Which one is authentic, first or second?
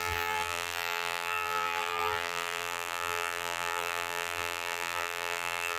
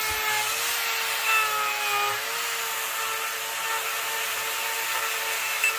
second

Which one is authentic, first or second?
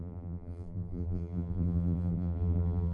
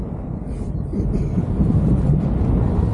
second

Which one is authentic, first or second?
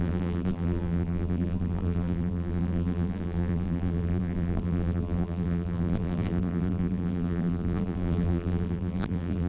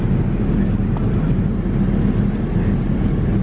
second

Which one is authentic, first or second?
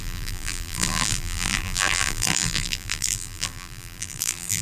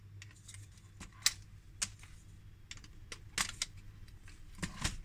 second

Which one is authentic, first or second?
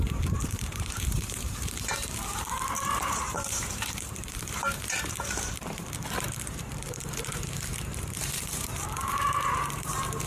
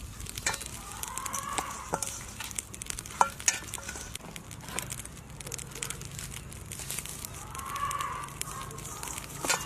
second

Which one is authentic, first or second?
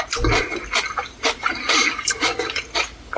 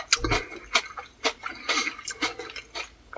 second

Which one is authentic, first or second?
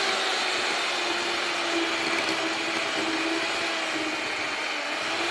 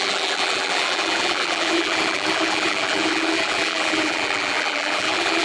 first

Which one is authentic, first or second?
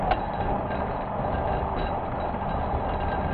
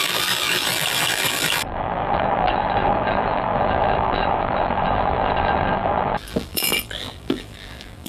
first